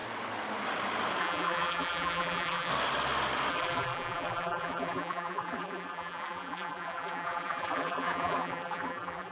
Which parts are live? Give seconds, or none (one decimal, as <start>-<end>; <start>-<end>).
0.0-1.2; 2.7-3.5